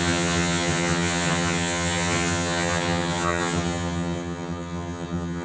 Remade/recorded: remade